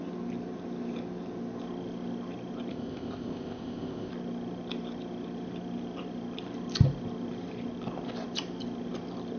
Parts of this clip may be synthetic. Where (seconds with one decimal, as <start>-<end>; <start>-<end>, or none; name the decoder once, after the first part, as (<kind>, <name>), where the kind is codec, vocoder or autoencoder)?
2.7-4.1 (codec, ZipCodec)